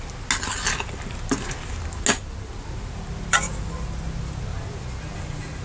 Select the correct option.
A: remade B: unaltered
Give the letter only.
B